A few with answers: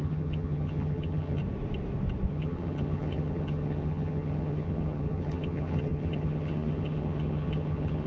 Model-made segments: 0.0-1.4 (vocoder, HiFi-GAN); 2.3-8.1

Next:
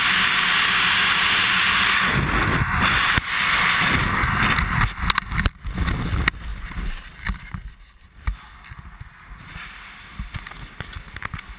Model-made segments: none

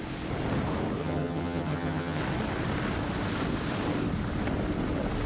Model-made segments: 1.0-2.2 (vocoder, HiFi-GAN)

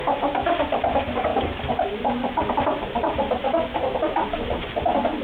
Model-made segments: none

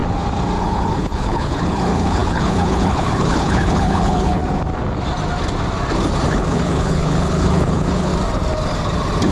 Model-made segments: 0.6-4.4 (codec, HILCodec); 6.3-8.1

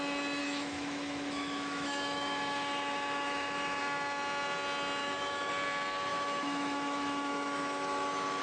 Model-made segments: 0.4-3.8 (autoencoder, DAC-VAE); 5.0-5.5; 6.1-8.4

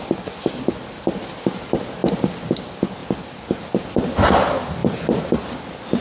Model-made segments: none